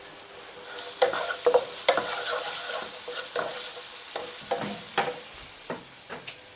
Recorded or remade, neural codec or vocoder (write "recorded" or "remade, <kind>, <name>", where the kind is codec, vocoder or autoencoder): recorded